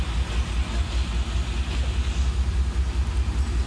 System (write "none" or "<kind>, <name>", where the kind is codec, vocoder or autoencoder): none